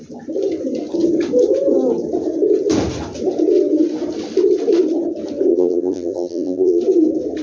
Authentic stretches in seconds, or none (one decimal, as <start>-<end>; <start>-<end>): 0.0-5.5; 6.8-7.4